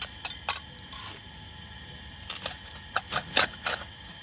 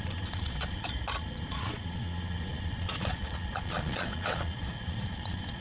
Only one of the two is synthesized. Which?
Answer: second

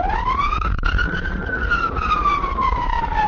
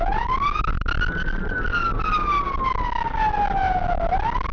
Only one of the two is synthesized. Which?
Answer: first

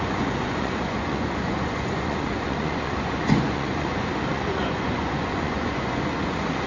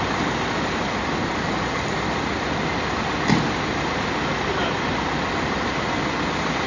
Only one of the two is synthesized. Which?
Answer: first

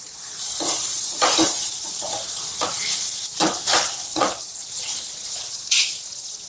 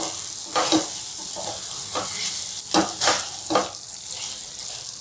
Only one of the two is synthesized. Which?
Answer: first